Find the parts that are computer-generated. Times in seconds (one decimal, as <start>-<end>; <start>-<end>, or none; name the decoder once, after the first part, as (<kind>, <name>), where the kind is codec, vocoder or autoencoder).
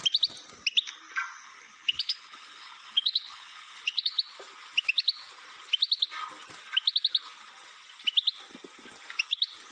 1.4-4.1 (codec, HILCodec)